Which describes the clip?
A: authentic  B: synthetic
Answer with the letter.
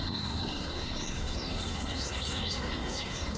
B